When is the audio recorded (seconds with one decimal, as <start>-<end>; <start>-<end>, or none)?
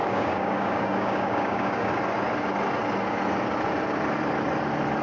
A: 1.9-5.0